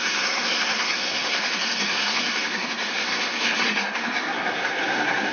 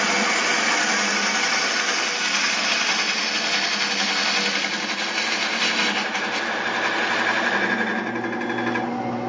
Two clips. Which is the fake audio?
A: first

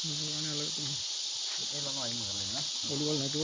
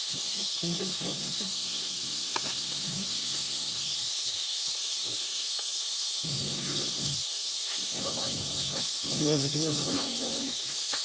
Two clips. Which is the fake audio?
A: second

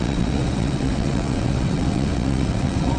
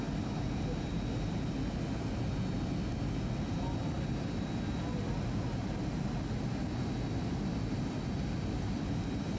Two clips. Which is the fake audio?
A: first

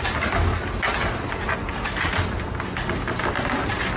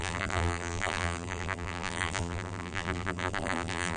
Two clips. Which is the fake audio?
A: second